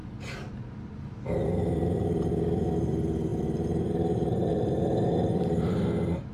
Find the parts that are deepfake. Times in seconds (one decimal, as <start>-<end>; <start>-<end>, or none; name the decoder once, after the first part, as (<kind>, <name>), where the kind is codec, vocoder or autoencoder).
0.0-2.3 (vocoder, BigVGAN v2); 3.3-5.8